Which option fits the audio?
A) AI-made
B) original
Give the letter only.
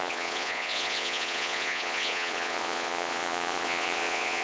A